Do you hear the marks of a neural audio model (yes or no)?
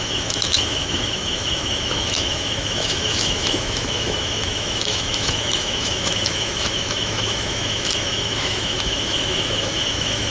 yes